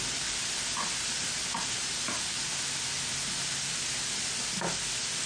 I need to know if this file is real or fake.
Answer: real